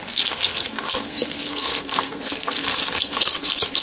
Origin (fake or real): fake